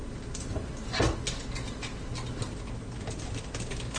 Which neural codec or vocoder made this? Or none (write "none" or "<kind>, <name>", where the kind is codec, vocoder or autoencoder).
none